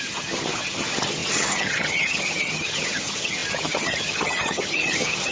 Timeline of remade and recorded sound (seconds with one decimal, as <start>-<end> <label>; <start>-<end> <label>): 0.0-5.3 remade

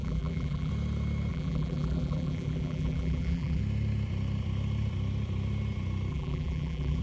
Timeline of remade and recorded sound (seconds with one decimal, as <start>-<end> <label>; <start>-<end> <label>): 0.0-0.7 remade; 0.7-1.3 recorded; 1.3-3.6 remade; 3.6-6.1 recorded; 6.1-7.0 remade

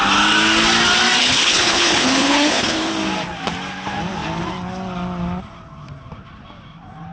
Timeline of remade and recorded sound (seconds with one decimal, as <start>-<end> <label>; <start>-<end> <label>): 0.0-1.2 recorded; 1.2-2.9 remade; 2.9-7.1 recorded

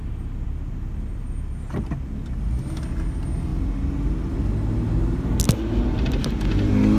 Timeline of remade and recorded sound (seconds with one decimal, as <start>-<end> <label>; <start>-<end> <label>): 0.0-7.0 recorded